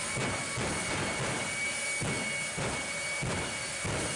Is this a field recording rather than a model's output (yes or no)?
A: yes